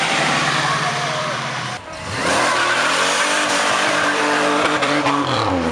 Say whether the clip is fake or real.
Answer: fake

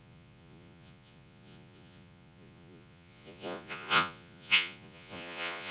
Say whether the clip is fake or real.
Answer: fake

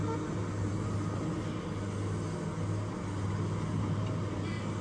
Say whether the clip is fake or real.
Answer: real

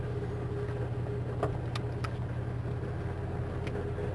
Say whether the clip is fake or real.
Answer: real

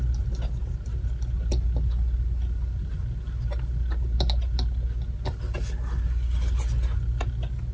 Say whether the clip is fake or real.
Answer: real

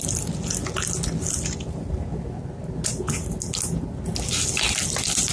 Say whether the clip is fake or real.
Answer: real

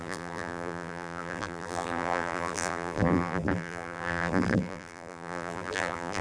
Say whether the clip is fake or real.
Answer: fake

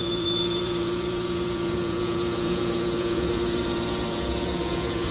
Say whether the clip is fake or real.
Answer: fake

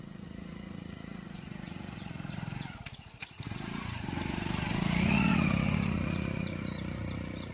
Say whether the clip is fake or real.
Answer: fake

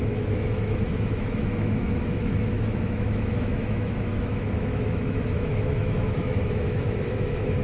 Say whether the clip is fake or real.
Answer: fake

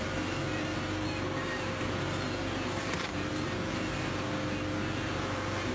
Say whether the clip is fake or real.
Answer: real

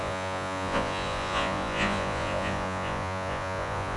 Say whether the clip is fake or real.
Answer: fake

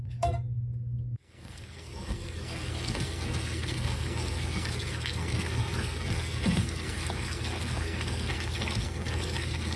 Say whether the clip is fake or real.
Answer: fake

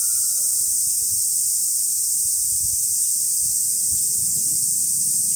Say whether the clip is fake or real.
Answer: real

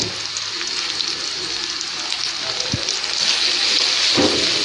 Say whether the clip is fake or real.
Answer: real